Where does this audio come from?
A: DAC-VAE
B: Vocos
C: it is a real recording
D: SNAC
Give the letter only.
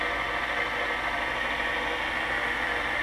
C